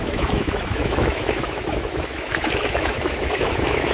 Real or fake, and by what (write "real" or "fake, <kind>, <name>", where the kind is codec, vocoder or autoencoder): fake, autoencoder, DAC-VAE